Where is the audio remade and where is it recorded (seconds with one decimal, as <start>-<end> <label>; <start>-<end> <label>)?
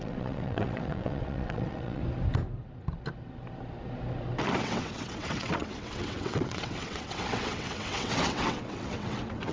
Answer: 0.0-2.0 remade; 2.0-4.6 recorded; 4.6-9.5 remade